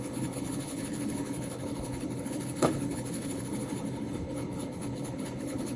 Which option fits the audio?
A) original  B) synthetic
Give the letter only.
B